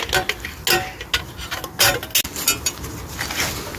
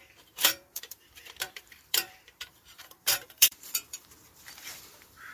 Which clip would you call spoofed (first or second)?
second